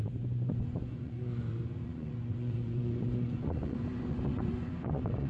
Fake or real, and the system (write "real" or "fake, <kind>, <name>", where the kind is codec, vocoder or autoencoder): fake, vocoder, Vocos